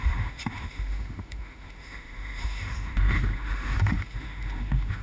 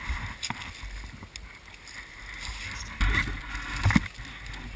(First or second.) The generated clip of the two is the first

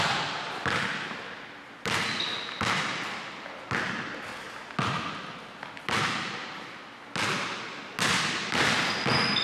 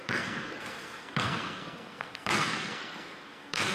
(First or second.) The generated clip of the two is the second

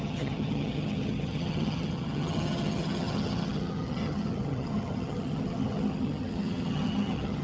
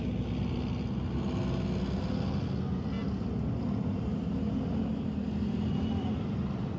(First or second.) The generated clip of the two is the first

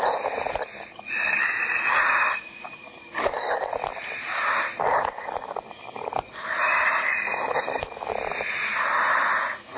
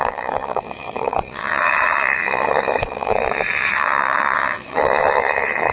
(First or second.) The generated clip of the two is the second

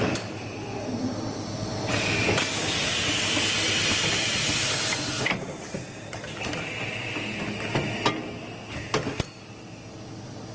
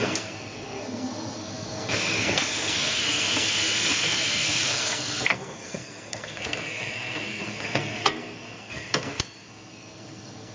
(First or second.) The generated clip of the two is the second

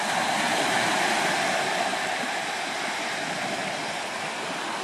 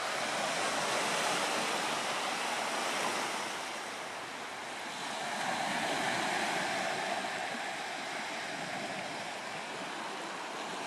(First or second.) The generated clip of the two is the first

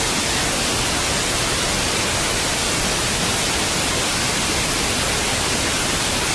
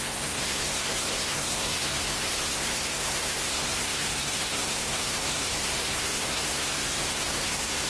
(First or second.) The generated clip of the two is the second